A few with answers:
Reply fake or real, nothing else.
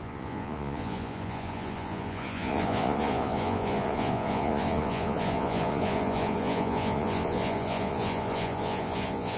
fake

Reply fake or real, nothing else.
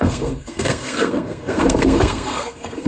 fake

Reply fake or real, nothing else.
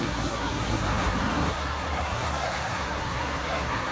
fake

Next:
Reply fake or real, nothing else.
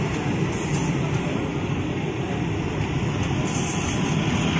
real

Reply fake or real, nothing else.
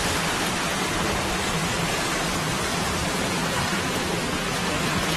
fake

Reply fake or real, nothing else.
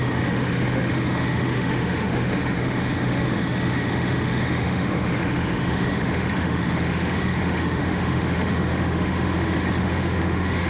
fake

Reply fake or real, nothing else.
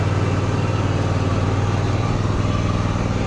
real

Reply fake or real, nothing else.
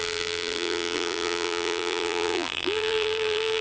fake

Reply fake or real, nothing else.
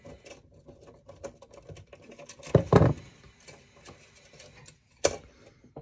real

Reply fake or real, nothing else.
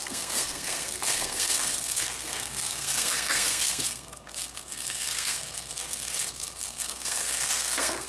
fake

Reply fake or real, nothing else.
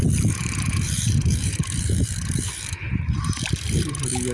fake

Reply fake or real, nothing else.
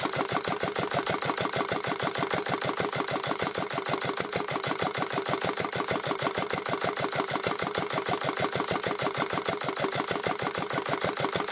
real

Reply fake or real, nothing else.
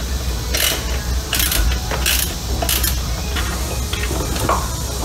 real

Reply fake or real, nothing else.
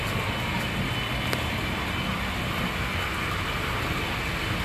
real